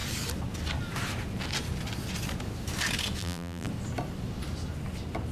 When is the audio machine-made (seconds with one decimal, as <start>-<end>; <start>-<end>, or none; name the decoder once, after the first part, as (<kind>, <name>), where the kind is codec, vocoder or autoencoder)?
3.2-3.7 (vocoder, BigVGAN v2)